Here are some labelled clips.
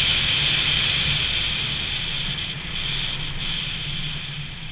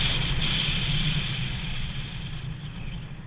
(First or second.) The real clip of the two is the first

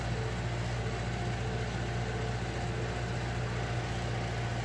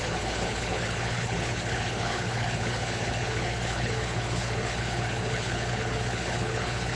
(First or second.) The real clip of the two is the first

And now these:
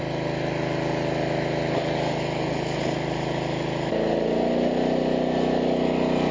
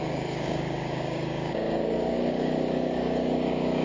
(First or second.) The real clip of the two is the first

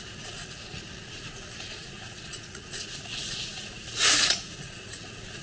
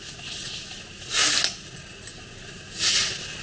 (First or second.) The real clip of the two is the second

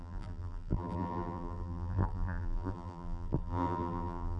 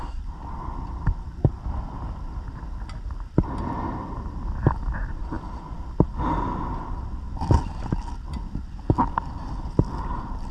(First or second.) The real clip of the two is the second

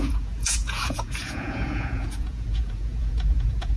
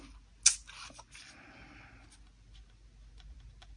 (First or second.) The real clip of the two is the second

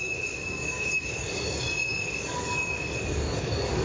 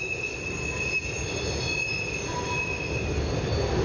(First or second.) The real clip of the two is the second